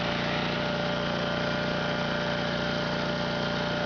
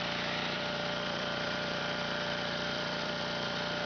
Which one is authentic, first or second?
first